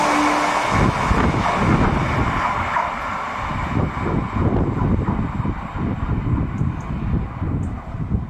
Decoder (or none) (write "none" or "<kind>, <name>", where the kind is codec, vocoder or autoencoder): none